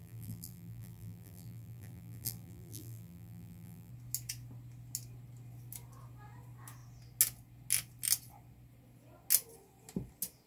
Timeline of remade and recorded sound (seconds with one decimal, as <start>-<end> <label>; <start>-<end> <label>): 0.0-3.9 remade; 3.9-10.5 recorded